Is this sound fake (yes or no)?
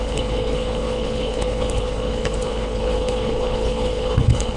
yes